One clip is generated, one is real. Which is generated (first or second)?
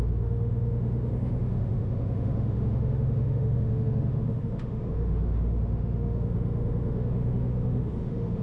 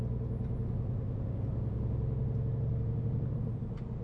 first